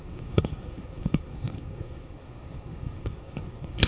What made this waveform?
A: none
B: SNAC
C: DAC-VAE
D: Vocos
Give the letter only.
B